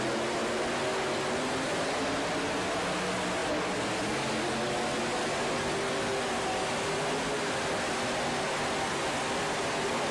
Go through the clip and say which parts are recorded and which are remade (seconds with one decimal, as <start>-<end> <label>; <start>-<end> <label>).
0.0-10.1 recorded